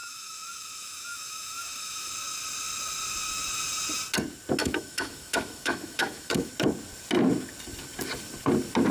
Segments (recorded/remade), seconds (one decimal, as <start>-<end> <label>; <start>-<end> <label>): 0.0-2.1 remade; 2.1-4.6 recorded; 4.6-6.5 remade; 6.5-8.9 recorded